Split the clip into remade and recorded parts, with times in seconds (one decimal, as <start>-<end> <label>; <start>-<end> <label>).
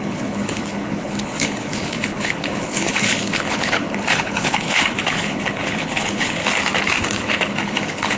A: 0.0-6.4 remade; 6.4-7.0 recorded; 7.0-8.2 remade